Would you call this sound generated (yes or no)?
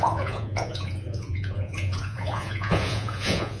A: yes